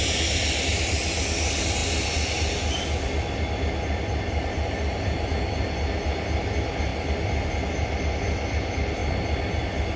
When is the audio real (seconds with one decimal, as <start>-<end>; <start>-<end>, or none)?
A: 0.0-10.0